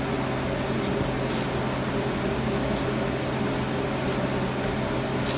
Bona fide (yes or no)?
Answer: yes